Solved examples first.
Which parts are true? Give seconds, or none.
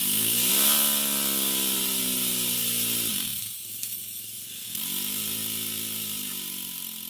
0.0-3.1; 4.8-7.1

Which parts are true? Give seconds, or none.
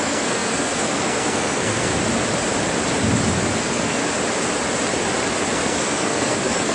1.9-3.6; 4.0-5.5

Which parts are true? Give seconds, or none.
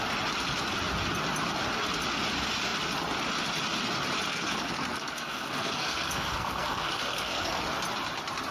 0.0-4.3; 7.5-8.5